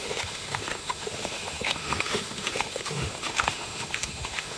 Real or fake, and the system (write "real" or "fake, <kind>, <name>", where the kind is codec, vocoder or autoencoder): fake, autoencoder, DAC-VAE